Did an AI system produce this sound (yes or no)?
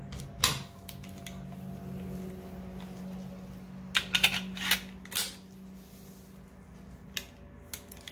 no